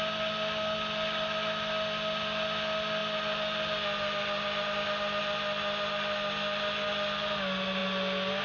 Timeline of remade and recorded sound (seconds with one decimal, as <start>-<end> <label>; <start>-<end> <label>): 0.0-8.4 recorded

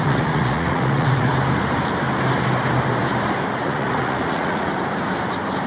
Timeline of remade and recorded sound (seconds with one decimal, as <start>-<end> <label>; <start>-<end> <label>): 0.0-1.3 remade; 1.3-3.6 recorded; 3.6-4.7 remade; 4.7-5.7 recorded